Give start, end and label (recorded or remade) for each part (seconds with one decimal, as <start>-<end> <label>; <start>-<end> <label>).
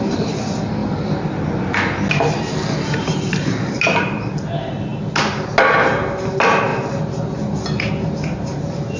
0.0-9.0 recorded